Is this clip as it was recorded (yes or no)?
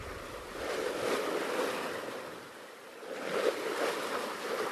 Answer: yes